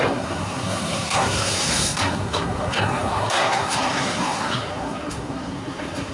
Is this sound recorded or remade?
remade